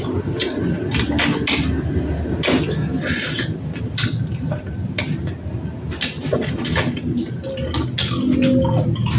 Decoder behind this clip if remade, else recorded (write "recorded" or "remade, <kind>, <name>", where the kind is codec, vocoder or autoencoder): recorded